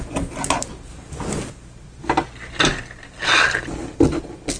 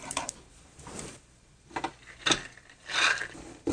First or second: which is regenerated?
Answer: second